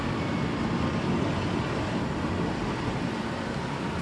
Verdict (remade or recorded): recorded